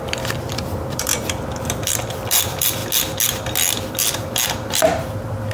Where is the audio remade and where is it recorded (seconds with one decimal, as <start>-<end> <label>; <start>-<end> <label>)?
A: 0.0-1.1 remade; 1.1-1.7 recorded; 1.7-2.8 remade; 2.8-3.9 recorded; 3.9-5.5 remade